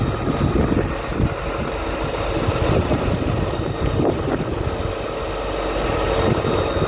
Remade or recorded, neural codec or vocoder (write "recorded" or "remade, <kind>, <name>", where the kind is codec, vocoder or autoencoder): recorded